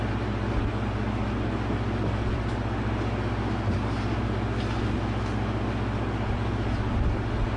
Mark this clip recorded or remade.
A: recorded